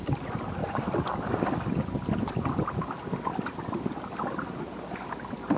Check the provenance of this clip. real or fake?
real